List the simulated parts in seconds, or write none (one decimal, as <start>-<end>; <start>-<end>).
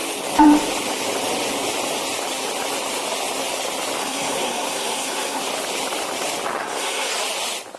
4.0-5.4; 6.6-7.1